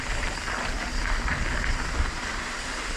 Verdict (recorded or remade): recorded